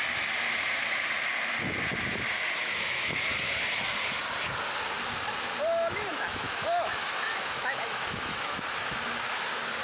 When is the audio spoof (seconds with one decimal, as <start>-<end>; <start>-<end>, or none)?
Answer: 2.6-3.2; 6.1-8.6